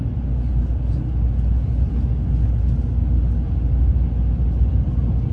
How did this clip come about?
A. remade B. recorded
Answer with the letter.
B